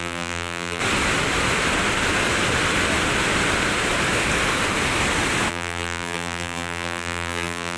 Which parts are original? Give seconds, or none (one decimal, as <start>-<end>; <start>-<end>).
0.8-5.5